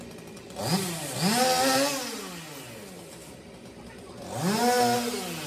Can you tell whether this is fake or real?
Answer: real